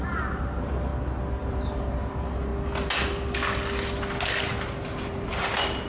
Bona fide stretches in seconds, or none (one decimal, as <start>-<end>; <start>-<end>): 0.9-1.5; 2.5-5.0